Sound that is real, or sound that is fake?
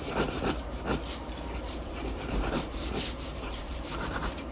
fake